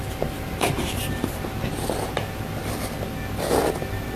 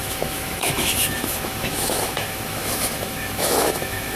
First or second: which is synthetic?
second